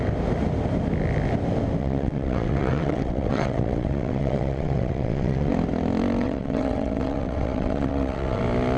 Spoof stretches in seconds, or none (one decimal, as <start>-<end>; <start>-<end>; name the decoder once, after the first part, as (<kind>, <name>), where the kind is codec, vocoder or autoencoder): 1.8-5.5 (vocoder, WaveNeXt); 6.2-8.4